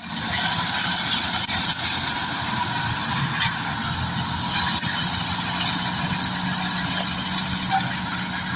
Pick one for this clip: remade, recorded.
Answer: recorded